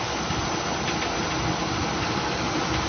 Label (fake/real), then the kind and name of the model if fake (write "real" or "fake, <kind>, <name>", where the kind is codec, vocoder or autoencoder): real